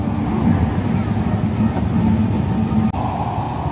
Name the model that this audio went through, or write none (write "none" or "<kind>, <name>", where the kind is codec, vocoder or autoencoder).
none